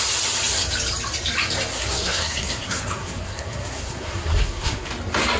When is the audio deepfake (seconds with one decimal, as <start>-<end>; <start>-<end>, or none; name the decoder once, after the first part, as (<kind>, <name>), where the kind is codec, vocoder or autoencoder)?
1.7-4.9 (codec, SNAC)